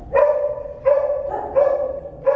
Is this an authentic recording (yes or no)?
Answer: yes